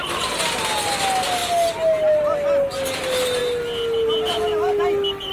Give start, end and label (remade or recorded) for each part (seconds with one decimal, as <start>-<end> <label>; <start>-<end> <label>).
0.0-5.3 recorded